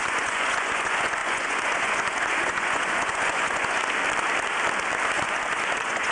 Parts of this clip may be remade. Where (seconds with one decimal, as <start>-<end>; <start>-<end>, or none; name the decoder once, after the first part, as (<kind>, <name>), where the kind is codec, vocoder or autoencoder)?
0.0-3.8 (vocoder, Vocos); 5.2-6.1